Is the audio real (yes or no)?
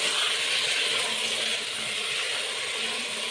yes